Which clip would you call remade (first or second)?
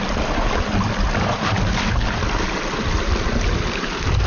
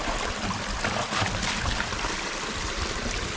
second